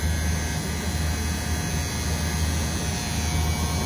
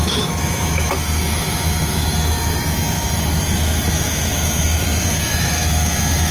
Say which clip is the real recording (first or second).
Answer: first